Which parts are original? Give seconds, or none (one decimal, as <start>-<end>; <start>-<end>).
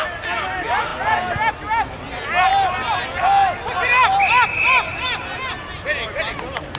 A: 0.0-6.8